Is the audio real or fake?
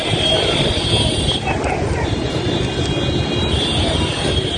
real